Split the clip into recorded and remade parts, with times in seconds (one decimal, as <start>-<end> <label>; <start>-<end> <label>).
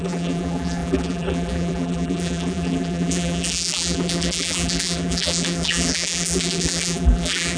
0.0-7.6 remade